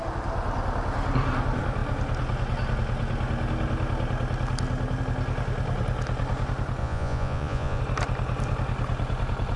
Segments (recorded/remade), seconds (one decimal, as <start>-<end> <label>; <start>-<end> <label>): 0.0-6.8 recorded; 6.8-7.8 remade; 7.8-9.6 recorded